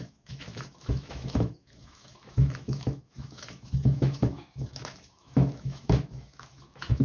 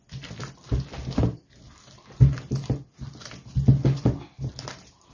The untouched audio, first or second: second